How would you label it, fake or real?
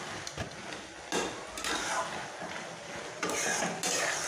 real